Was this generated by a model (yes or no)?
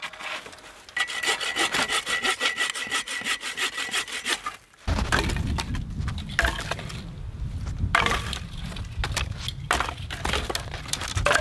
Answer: no